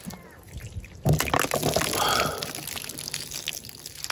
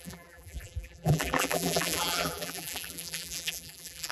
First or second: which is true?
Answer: first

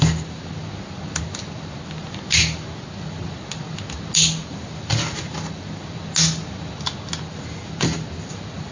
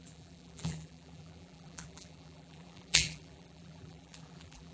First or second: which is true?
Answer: first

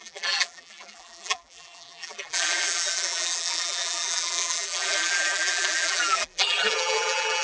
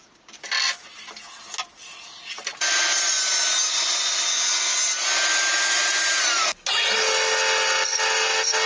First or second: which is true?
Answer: second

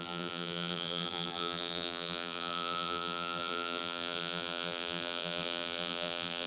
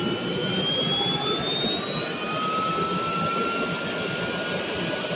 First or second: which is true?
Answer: second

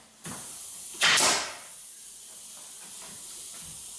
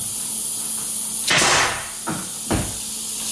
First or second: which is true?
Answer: second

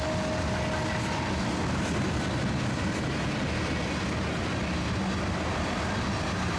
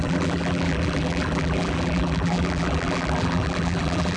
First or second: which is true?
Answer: first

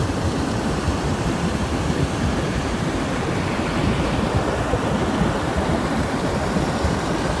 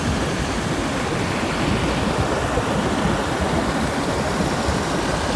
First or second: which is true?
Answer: second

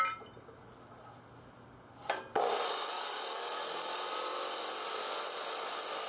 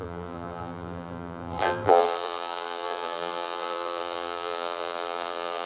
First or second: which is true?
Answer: first